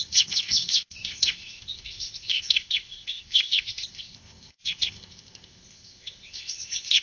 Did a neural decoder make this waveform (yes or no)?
yes